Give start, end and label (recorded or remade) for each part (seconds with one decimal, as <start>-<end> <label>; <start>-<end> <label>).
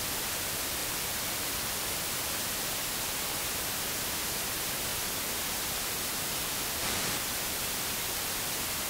0.0-0.8 recorded; 0.8-1.8 remade; 1.8-6.8 recorded; 6.8-8.2 remade; 8.2-8.9 recorded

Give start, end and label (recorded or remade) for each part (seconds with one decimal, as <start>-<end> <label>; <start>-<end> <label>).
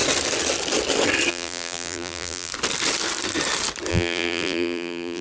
0.0-1.3 recorded; 1.3-2.5 remade; 2.5-3.9 recorded; 3.9-5.2 remade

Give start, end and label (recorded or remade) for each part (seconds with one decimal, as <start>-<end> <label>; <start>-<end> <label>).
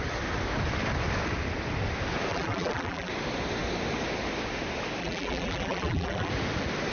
0.0-2.3 recorded; 2.3-3.1 remade; 3.1-5.0 recorded; 5.0-6.3 remade; 6.3-6.9 recorded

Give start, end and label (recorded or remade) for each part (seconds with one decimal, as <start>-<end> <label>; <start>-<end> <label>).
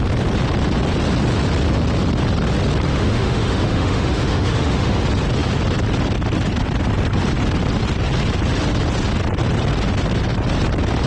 0.0-2.9 recorded; 2.9-5.0 remade; 5.0-11.1 recorded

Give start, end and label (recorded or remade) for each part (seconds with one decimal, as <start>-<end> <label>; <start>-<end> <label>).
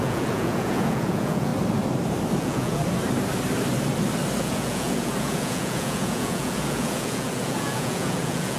0.0-1.5 remade; 1.5-2.4 recorded; 2.4-2.8 remade; 2.8-4.4 recorded; 4.4-8.6 remade